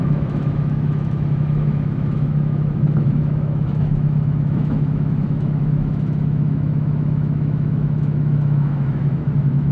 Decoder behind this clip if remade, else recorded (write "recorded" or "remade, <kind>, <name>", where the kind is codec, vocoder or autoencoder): remade, autoencoder, DAC-VAE